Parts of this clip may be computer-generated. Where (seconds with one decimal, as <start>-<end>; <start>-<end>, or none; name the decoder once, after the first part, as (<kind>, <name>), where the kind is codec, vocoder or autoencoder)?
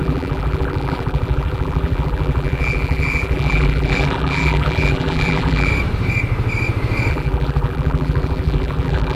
0.0-5.7 (vocoder, BigVGAN v2); 7.1-9.2